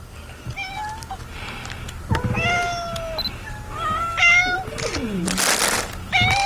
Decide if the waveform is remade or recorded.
recorded